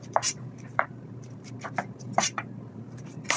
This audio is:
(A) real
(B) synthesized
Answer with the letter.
B